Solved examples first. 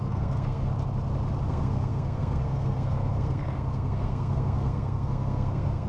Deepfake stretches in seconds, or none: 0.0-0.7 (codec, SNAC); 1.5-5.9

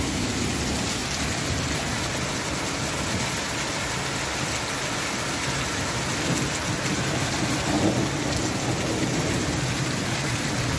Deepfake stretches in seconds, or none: none

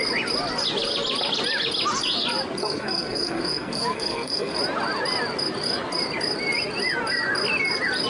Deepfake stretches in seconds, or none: 2.6-4.6 (codec, SNAC)

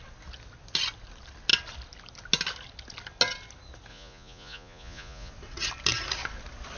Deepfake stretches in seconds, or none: 3.9-5.3 (vocoder, Vocos)

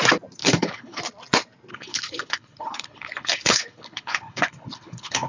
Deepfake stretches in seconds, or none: 0.4-1.0 (codec, HILCodec); 1.7-5.3